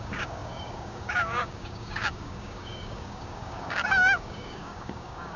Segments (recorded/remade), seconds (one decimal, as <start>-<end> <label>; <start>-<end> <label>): 0.0-5.4 remade